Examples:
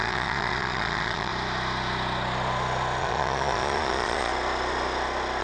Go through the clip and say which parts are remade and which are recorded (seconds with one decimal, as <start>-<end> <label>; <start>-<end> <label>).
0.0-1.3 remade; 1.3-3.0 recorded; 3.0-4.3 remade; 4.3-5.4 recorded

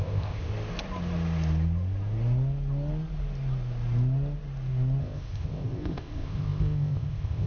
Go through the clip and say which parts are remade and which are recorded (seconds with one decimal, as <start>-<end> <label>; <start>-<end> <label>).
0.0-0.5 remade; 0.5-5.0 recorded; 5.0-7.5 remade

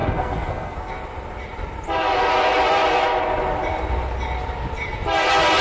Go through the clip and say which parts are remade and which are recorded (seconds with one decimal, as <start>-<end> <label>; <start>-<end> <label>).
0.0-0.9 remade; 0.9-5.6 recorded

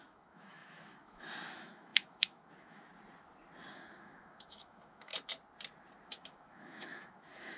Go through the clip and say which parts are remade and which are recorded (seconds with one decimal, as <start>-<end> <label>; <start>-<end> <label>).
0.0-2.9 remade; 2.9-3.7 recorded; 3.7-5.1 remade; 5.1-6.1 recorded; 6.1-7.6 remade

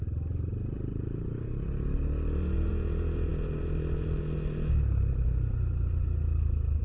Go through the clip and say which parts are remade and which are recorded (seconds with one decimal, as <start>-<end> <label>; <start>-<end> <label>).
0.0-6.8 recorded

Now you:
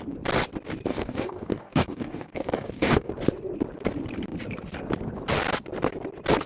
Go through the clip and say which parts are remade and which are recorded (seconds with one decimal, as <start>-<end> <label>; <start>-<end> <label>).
0.0-0.9 recorded; 0.9-3.1 remade; 3.1-6.5 recorded